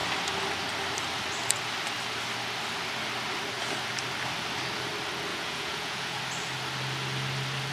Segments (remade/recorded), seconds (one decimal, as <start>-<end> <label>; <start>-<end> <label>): 0.0-5.3 recorded; 5.3-6.2 remade; 6.2-7.7 recorded